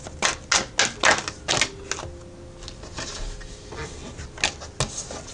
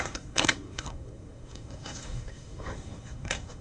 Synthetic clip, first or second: second